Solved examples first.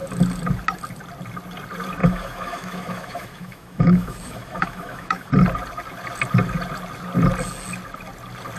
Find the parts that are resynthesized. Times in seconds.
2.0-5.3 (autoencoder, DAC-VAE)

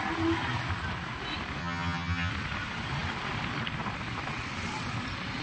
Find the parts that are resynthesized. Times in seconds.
1.6-2.3 (vocoder, HiFi-GAN)

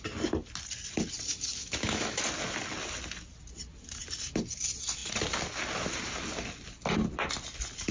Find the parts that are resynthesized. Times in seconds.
1.6-2.2 (autoencoder, DAC-VAE)

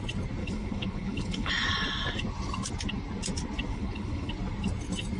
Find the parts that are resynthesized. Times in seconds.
0.4-1.5 (codec, HILCodec); 3.7-4.3

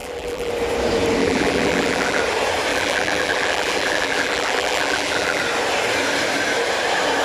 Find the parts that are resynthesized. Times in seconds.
0.0-0.5 (vocoder, BigVGAN v2); 1.2-2.2; 2.7-5.4

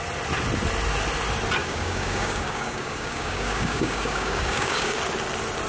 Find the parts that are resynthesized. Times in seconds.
1.6-5.0 (codec, DAC)

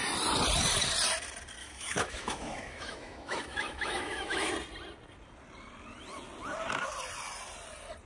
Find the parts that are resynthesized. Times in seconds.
1.6-4.5 (autoencoder, DAC-VAE)